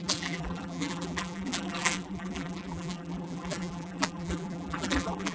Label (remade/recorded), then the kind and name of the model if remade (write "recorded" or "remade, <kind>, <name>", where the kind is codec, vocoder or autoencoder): remade, vocoder, BigVGAN v2